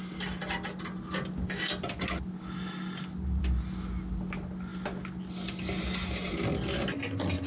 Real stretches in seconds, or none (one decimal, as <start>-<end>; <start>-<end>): 0.0-7.5